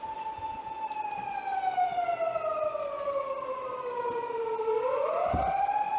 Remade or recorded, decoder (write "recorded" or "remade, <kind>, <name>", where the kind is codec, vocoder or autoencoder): recorded